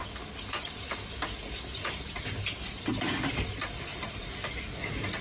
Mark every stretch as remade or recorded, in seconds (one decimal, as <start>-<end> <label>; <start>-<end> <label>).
0.0-3.9 recorded; 3.9-4.5 remade; 4.5-5.2 recorded